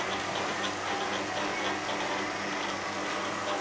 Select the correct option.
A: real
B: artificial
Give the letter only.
A